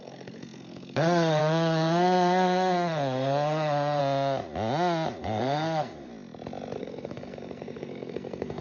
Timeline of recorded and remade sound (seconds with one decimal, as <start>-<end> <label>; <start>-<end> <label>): 0.0-4.0 remade; 4.0-5.2 recorded; 5.2-6.1 remade; 6.1-6.8 recorded; 6.8-8.6 remade